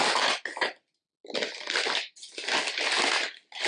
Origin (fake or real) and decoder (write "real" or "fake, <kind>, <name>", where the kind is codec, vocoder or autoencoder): real